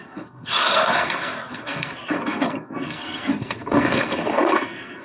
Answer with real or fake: fake